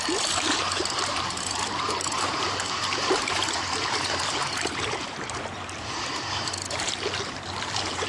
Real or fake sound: fake